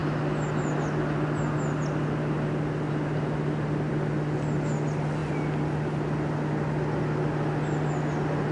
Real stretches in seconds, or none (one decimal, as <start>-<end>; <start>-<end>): 0.0-8.5